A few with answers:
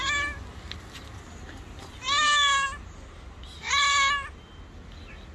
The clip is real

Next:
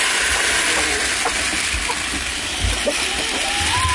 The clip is real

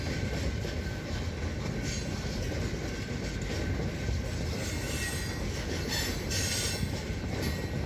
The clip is real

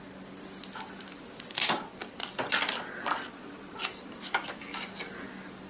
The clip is real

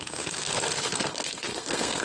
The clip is fake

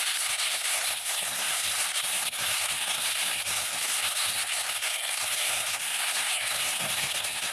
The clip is fake